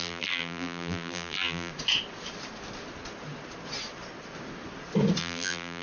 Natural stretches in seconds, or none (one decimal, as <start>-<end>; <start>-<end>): 1.7-5.2